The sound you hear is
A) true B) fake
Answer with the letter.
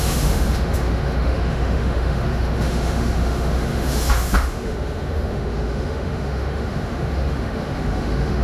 B